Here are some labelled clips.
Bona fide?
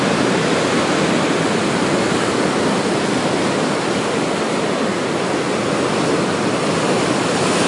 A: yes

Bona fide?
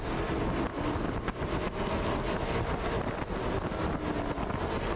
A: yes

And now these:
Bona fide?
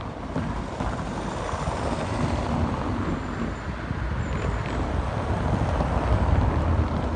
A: yes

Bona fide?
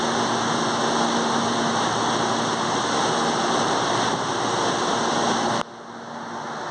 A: yes